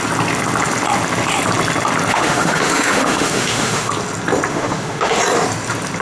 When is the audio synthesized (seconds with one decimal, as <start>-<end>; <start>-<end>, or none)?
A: 2.1-3.9; 4.5-5.2